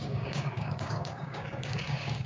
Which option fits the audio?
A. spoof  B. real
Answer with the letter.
A